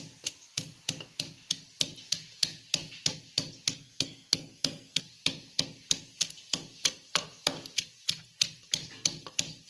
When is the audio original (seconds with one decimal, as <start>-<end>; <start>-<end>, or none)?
0.0-3.8; 5.0-9.7